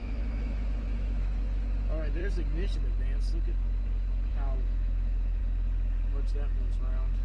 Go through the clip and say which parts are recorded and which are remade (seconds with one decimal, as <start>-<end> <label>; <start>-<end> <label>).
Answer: 0.0-2.2 remade; 2.2-4.3 recorded; 4.3-5.4 remade; 5.4-6.8 recorded; 6.8-7.2 remade